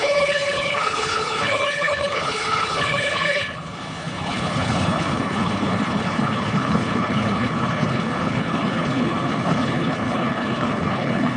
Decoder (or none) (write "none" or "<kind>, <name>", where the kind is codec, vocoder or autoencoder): codec, HILCodec